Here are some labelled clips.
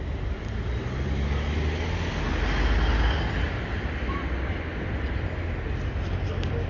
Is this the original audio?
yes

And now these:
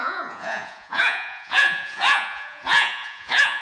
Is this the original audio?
no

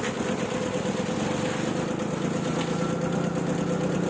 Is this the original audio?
yes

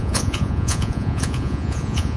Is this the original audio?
no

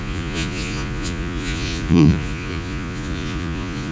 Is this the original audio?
no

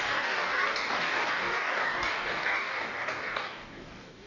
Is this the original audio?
no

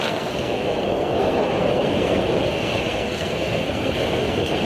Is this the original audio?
no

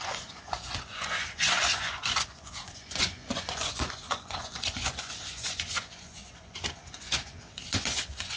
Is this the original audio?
no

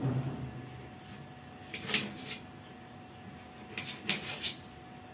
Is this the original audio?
yes